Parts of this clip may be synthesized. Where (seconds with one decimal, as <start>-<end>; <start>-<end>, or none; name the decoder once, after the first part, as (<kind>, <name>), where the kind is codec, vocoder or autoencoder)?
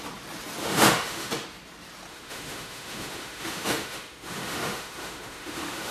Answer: 0.6-1.3 (autoencoder, DAC-VAE); 2.1-5.9